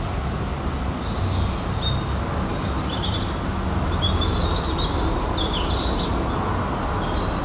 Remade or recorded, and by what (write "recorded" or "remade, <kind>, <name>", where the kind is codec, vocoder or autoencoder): recorded